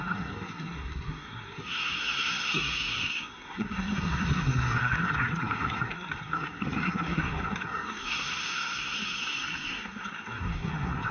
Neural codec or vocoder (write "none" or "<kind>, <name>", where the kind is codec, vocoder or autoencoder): codec, SNAC